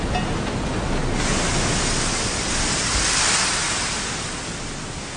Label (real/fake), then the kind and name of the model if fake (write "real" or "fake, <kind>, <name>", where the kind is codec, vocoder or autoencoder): real